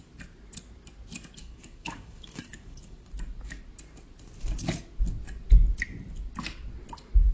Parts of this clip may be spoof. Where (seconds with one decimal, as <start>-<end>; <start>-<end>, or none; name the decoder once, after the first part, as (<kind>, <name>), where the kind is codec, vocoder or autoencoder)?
1.4-3.1 (codec, DAC)